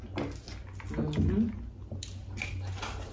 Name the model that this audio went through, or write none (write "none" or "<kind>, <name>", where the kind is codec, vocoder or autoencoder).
none